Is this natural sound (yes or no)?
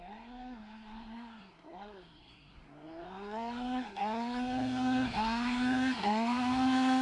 no